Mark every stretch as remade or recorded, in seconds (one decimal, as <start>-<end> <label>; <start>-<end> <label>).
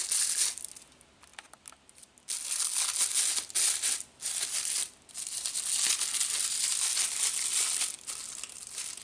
0.0-9.0 recorded